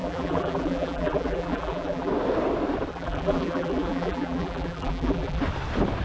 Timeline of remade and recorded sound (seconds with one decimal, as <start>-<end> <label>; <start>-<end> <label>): 0.0-2.1 remade; 2.1-2.9 recorded; 2.9-5.4 remade; 5.4-6.0 recorded

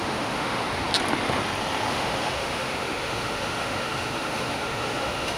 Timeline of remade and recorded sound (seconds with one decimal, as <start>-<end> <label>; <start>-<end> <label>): 0.0-0.9 remade; 0.9-1.9 recorded; 1.9-5.4 remade

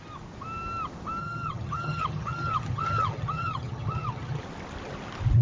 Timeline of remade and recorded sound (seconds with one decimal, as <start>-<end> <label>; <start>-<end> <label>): 0.0-1.2 recorded; 1.2-4.4 remade; 4.4-5.4 recorded

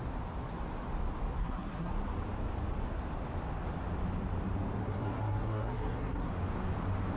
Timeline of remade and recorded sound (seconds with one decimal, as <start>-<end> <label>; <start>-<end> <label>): 0.0-1.4 recorded; 1.4-1.9 remade; 1.9-4.8 recorded; 4.8-6.3 remade; 6.3-7.2 recorded

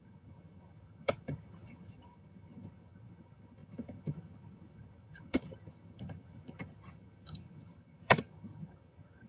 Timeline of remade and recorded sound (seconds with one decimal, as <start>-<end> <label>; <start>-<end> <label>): 0.0-9.3 remade